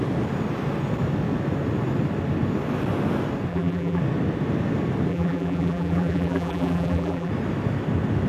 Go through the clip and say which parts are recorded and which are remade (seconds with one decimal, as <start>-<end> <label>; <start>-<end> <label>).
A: 0.0-3.5 recorded; 3.5-4.0 remade; 4.0-5.1 recorded; 5.1-7.3 remade; 7.3-8.3 recorded